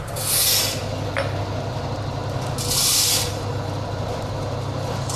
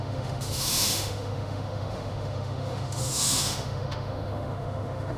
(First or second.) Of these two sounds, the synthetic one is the second